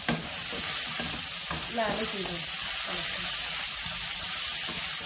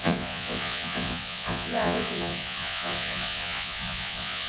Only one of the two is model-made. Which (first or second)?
second